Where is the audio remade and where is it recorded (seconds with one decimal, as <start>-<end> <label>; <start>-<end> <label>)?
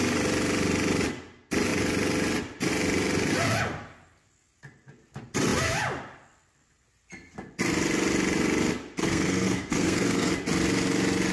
0.0-9.0 recorded; 9.0-10.3 remade; 10.3-11.3 recorded